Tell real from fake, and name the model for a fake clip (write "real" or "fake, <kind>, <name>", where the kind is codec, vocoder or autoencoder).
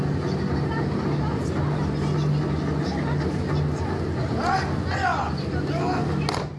real